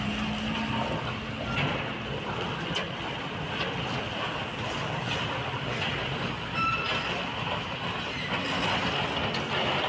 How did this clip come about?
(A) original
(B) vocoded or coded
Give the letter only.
A